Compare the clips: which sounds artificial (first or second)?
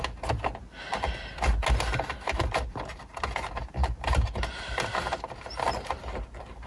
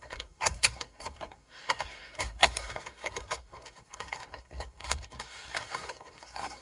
second